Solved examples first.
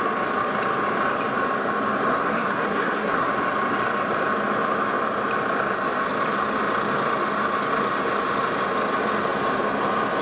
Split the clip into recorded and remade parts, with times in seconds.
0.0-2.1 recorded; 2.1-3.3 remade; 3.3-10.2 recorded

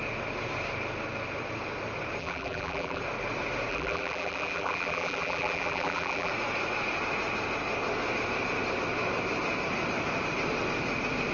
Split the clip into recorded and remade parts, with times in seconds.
0.0-2.2 recorded; 2.2-3.0 remade; 3.0-3.7 recorded; 3.7-6.3 remade; 6.3-11.3 recorded

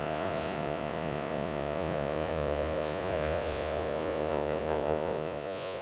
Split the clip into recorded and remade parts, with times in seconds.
0.0-5.8 remade

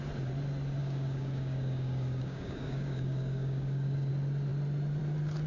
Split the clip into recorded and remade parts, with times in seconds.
0.0-0.8 recorded; 0.8-4.1 remade; 4.1-5.5 recorded

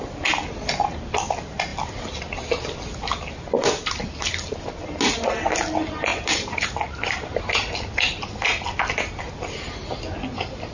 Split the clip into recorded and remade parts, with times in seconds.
0.0-6.1 recorded; 6.1-7.4 remade; 7.4-10.7 recorded